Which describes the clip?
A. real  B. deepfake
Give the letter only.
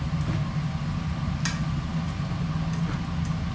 A